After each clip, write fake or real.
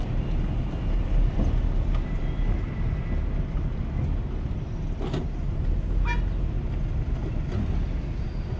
real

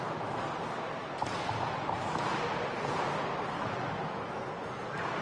real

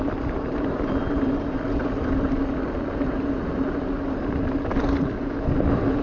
real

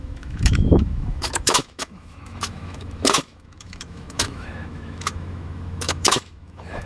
fake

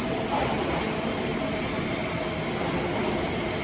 real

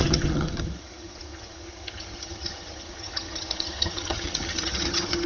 fake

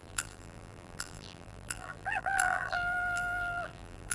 fake